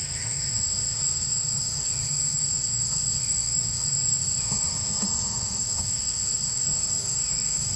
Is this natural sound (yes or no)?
no